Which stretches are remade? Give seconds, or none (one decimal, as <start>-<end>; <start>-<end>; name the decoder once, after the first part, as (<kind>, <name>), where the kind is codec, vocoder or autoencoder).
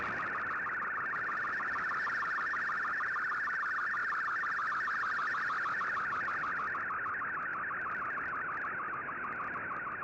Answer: none